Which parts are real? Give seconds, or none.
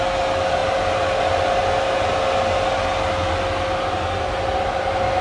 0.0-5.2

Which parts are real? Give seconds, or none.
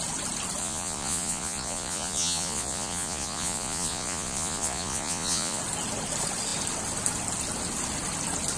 0.0-0.6; 5.6-8.6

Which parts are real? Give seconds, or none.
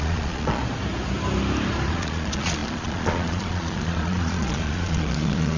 0.6-1.9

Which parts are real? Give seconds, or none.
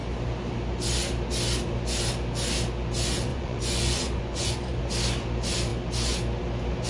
0.0-3.3; 4.8-6.9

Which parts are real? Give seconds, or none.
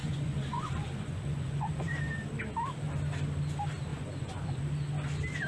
1.9-3.9; 4.6-5.5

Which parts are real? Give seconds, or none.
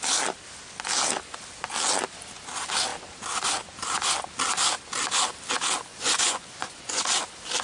0.0-5.9; 7.0-7.6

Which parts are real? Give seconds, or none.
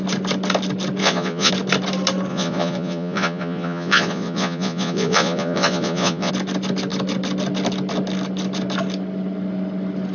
0.0-1.0; 1.5-2.3; 6.3-10.1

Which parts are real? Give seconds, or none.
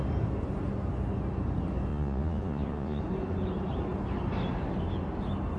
0.0-1.9; 3.0-5.6